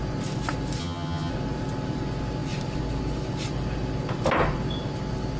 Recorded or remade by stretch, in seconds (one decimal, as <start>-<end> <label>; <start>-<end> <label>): 0.0-0.8 recorded; 0.8-1.3 remade; 1.3-5.4 recorded